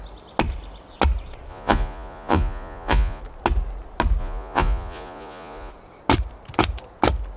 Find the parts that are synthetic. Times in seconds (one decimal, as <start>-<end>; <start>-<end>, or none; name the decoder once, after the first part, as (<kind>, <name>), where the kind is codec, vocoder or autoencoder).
1.5-3.2 (vocoder, Vocos); 4.2-5.7